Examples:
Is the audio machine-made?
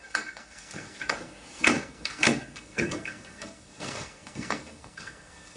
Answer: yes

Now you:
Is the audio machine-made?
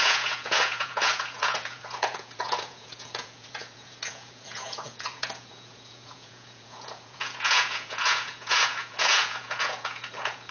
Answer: yes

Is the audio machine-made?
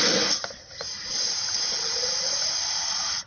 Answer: no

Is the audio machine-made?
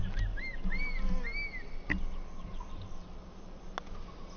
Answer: no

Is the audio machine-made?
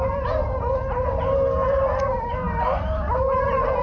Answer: no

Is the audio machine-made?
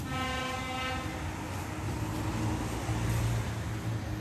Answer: no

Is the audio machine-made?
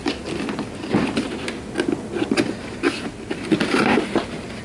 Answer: no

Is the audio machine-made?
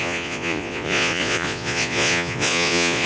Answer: yes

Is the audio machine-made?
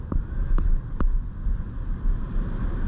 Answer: no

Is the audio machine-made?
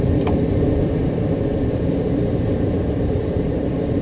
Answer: yes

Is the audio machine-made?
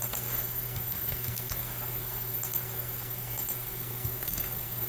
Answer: yes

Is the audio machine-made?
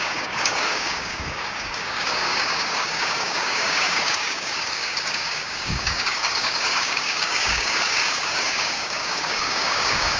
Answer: yes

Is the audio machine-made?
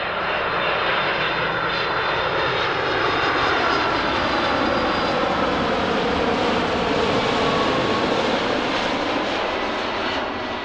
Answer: no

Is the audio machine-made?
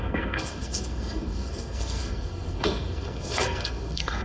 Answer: yes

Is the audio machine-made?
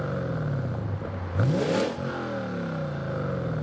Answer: no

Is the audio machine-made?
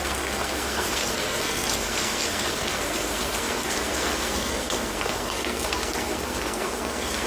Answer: yes